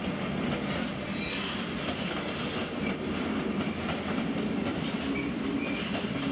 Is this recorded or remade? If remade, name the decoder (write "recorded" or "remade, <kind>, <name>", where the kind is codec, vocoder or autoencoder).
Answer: recorded